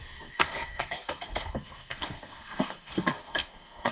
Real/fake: fake